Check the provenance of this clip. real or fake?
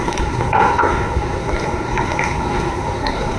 fake